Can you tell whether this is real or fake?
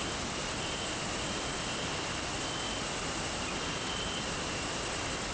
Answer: real